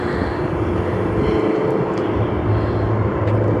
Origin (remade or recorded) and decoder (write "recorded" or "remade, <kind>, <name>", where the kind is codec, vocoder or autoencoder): remade, vocoder, BigVGAN v2